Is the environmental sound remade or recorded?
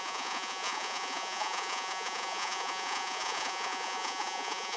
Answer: remade